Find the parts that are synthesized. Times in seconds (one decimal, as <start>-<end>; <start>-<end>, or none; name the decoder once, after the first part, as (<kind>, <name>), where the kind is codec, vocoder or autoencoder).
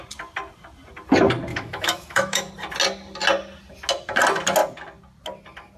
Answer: 1.5-2.5 (autoencoder, DAC-VAE)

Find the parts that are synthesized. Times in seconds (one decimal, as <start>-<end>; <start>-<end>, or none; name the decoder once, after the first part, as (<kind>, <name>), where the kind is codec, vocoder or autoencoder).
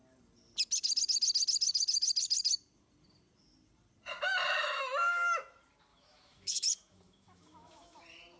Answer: 4.6-5.5 (autoencoder, DAC-VAE); 5.9-8.0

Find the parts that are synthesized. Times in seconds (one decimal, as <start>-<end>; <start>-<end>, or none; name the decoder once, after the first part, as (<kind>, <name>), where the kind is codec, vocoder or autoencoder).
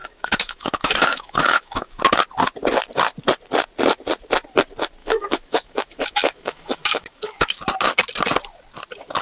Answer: 0.0-2.0 (autoencoder, DAC-VAE); 5.0-7.6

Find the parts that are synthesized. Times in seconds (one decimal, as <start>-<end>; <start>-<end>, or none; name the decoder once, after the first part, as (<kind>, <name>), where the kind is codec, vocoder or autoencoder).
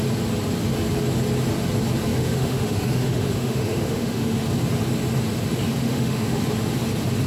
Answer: 2.1-4.4 (autoencoder, DAC-VAE); 5.8-6.4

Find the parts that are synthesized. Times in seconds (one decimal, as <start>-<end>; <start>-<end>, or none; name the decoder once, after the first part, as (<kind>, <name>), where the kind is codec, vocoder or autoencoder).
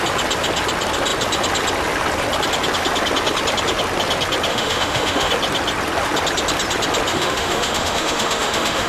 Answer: 4.5-5.3 (autoencoder, DAC-VAE); 7.1-8.9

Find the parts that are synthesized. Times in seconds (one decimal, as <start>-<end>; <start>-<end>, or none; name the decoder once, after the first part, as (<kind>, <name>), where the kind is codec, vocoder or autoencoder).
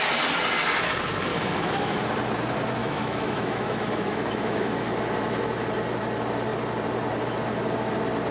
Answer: 1.3-2.0 (autoencoder, DAC-VAE); 2.8-4.9